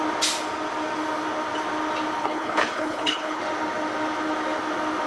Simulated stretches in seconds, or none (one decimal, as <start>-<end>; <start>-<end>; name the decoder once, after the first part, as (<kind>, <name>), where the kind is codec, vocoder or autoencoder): 2.2-3.4 (codec, HILCodec)